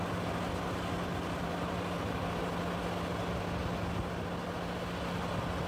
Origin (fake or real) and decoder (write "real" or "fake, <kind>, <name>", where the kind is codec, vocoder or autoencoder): real